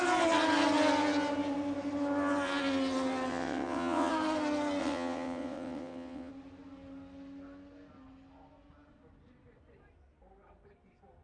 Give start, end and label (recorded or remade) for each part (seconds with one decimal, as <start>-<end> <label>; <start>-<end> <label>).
0.0-3.3 recorded; 3.3-4.1 remade; 4.1-4.8 recorded; 4.8-6.3 remade; 6.3-11.2 recorded